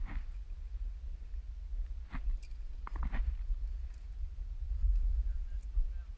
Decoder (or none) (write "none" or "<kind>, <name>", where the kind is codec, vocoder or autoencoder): none